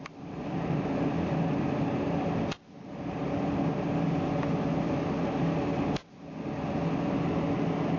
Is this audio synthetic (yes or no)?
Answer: no